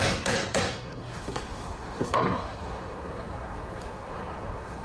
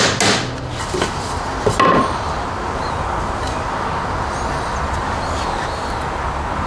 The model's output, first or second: first